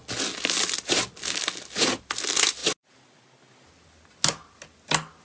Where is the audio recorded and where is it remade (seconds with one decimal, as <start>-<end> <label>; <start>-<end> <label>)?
0.0-5.2 recorded